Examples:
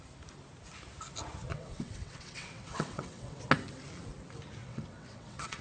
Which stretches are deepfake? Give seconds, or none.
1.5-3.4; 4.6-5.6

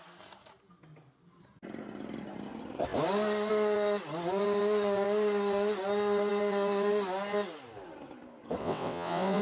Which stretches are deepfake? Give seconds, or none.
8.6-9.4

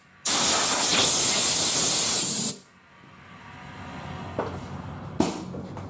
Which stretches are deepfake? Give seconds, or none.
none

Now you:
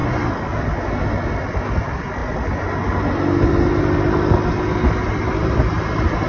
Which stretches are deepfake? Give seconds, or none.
none